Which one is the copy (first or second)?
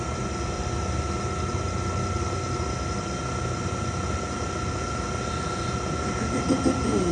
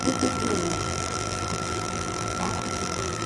second